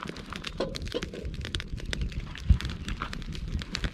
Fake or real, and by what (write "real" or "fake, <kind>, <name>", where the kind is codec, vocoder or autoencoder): fake, vocoder, BigVGAN v2